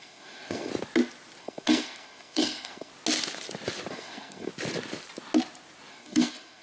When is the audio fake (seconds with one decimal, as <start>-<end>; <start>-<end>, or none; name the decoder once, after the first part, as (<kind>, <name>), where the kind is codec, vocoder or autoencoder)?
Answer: 0.0-0.7 (codec, SNAC); 1.4-2.9; 3.9-4.5; 5.9-6.6